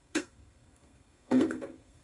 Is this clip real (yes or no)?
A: no